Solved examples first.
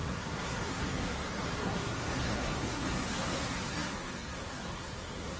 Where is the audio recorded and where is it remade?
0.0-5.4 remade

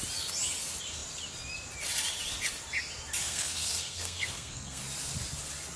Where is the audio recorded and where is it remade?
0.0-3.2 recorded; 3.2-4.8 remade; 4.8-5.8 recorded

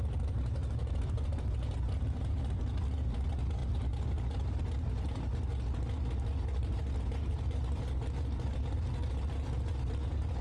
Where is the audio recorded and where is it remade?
0.0-0.6 recorded; 0.6-2.4 remade; 2.4-3.6 recorded; 3.6-4.1 remade; 4.1-6.6 recorded; 6.6-7.6 remade; 7.6-10.4 recorded

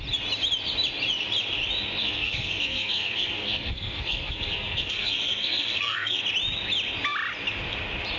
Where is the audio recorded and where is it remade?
0.0-2.0 recorded; 2.0-6.2 remade; 6.2-8.2 recorded